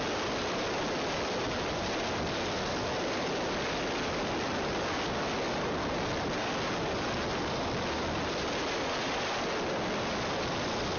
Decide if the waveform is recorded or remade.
recorded